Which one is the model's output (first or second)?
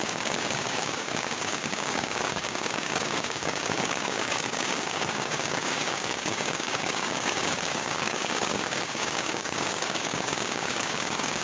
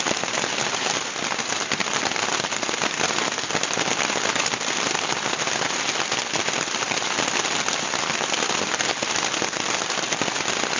first